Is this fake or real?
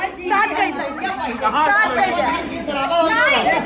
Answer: real